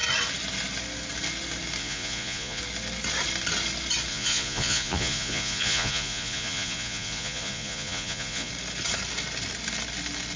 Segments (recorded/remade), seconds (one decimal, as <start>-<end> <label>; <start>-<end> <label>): 0.0-1.8 recorded; 1.8-2.6 remade; 2.6-4.1 recorded; 4.1-8.5 remade; 8.5-10.4 recorded